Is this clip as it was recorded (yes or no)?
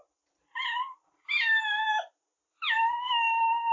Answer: yes